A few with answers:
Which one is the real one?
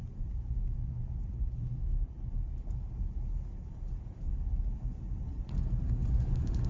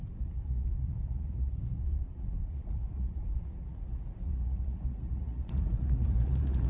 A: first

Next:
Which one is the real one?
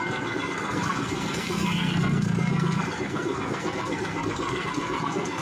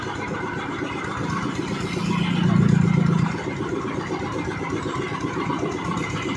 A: second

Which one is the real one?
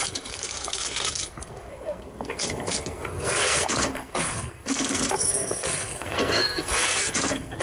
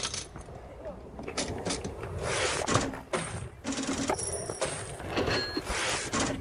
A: second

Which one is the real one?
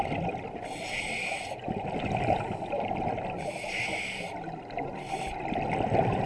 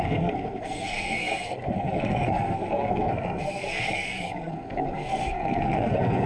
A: first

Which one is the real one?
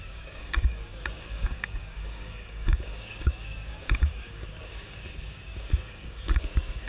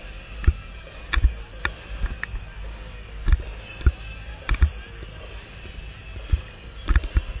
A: second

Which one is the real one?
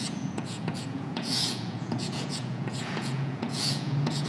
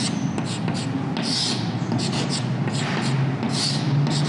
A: second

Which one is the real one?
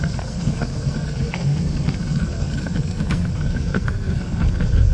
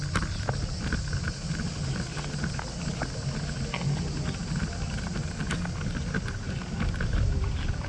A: second